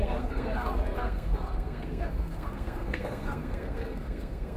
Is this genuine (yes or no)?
no